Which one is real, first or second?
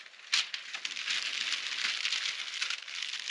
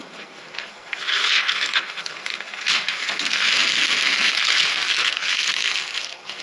first